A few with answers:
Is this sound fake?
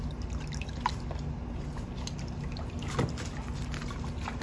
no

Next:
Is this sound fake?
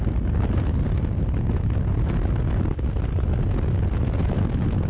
no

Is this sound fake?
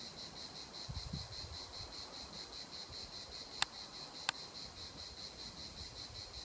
no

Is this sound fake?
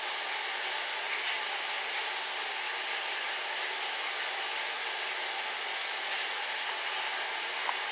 no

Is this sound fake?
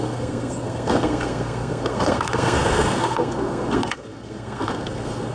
yes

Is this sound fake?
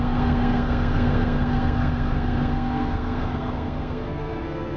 yes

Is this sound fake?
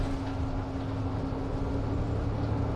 no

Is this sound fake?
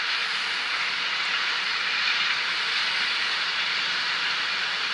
no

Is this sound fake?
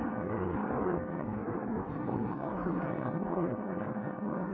yes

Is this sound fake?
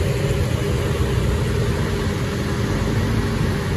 no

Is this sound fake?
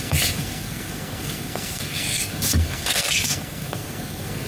yes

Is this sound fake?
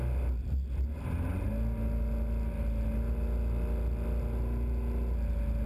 no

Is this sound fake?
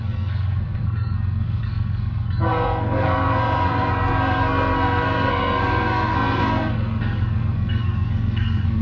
yes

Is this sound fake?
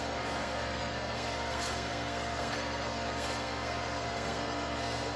yes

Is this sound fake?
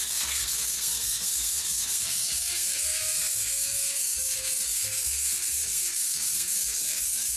yes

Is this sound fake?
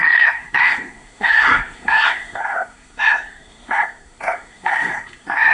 yes